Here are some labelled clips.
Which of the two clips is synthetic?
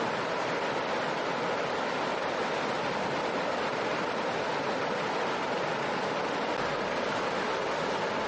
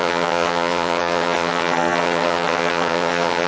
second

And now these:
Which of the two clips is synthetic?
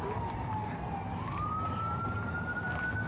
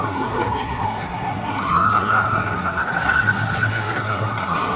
second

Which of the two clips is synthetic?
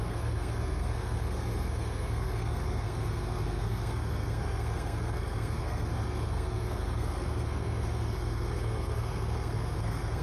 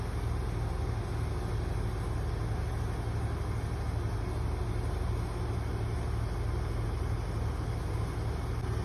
first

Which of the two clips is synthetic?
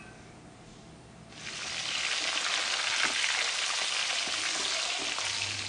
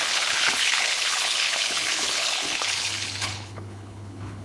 second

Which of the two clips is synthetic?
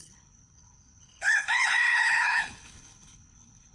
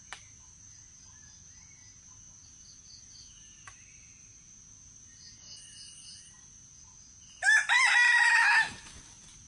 first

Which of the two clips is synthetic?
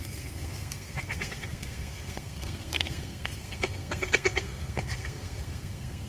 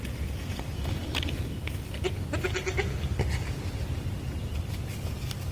first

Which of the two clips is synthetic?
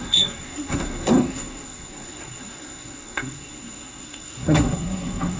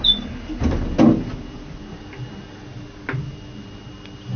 first